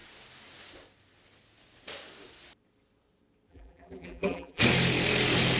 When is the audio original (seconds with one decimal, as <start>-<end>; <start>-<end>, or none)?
0.0-3.5; 4.6-5.6